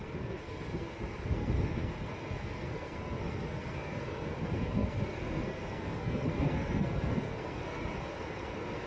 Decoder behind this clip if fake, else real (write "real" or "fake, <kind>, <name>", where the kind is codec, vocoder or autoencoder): fake, codec, SNAC